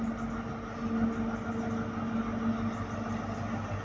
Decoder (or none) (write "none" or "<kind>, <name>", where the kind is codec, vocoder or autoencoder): none